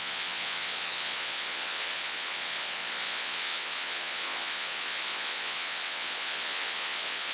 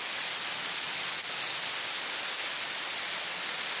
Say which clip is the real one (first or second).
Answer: second